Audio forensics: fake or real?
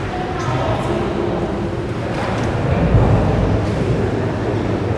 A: real